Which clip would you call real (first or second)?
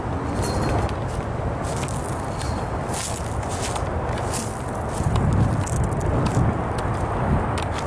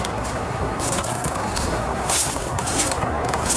first